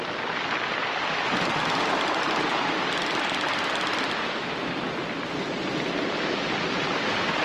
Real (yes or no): yes